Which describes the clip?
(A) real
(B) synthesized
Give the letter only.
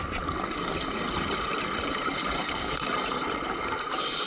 A